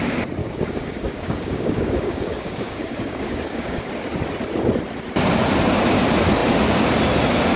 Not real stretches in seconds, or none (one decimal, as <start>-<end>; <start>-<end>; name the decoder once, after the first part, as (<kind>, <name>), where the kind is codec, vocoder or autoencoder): 0.4-3.8 (codec, DAC)